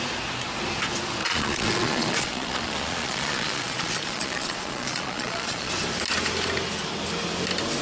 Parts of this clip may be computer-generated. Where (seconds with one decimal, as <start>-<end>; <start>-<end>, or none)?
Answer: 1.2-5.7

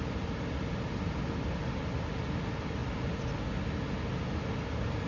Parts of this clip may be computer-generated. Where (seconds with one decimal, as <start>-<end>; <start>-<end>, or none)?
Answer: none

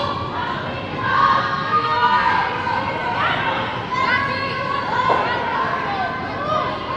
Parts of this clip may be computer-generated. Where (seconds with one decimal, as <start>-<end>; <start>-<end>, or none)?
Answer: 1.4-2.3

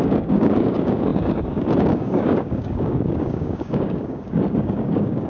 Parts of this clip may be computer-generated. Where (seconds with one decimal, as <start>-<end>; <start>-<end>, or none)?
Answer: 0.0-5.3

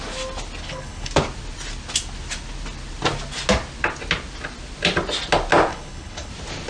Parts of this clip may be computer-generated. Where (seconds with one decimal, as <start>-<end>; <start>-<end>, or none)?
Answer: 0.6-1.1; 5.7-6.3

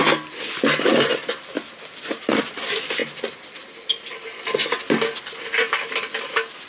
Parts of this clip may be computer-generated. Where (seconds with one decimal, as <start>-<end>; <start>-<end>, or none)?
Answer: none